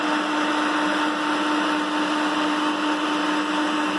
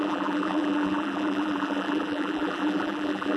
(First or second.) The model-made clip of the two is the second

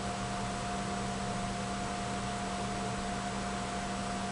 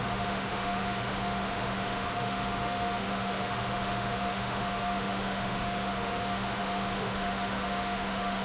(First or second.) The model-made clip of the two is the second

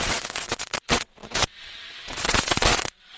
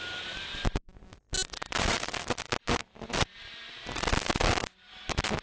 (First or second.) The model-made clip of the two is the first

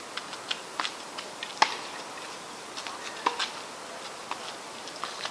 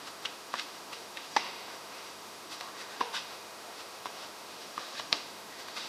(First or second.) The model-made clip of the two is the second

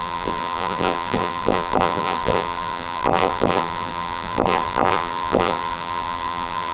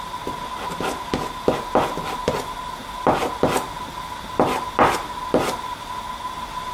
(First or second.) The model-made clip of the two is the first